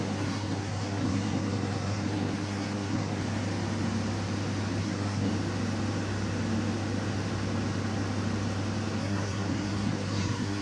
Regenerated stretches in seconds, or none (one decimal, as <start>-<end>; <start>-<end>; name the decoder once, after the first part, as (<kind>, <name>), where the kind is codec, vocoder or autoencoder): 0.0-3.2 (codec, SNAC); 4.8-5.3; 9.0-10.6